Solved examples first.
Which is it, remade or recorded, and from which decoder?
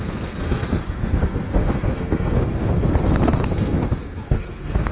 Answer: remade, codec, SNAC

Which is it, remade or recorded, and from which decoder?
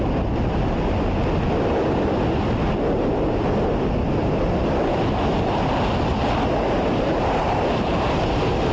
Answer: recorded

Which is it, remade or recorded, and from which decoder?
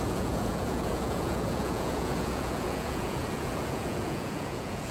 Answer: remade, vocoder, Vocos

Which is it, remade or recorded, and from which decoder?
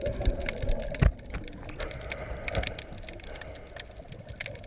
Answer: recorded